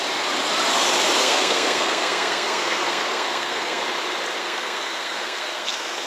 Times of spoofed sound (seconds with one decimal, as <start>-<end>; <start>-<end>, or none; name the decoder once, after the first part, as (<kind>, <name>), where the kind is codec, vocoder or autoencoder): 1.2-3.8 (codec, SNAC); 4.4-6.1